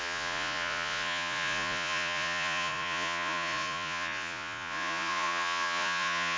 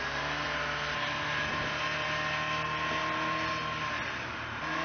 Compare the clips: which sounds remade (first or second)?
first